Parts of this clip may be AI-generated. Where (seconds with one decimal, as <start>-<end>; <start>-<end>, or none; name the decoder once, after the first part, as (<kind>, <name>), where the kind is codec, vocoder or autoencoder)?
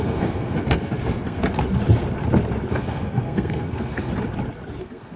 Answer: 0.0-1.4 (codec, SNAC); 2.7-4.1; 4.8-5.2